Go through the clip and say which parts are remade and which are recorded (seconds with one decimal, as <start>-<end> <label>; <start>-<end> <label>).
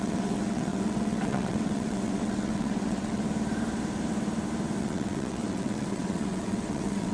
0.0-3.2 remade; 3.2-4.8 recorded; 4.8-7.1 remade